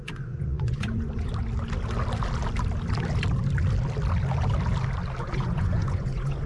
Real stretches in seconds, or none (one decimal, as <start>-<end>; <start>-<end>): 1.3-5.2

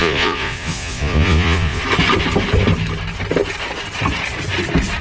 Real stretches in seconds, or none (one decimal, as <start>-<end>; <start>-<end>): 1.8-5.0

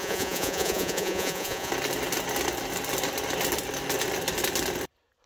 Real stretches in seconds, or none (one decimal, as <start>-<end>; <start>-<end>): 1.7-5.3